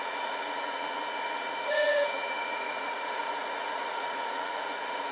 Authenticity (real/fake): fake